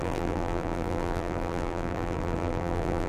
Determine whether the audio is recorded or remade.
remade